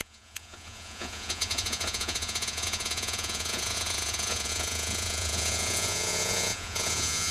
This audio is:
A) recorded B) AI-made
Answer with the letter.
B